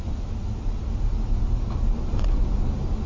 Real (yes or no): yes